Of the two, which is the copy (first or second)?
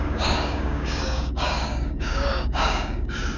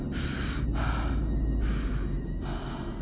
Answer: first